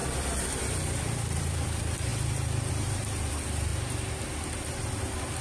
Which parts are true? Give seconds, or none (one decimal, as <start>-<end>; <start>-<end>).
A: 2.1-2.7; 3.7-4.7